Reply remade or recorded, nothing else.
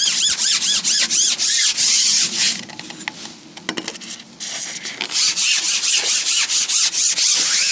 recorded